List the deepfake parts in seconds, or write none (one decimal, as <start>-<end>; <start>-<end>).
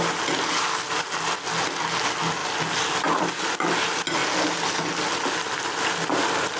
none